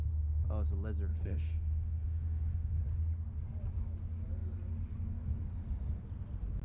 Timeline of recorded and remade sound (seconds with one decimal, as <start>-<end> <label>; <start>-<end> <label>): 0.0-1.1 recorded; 1.1-2.8 remade; 2.8-6.6 recorded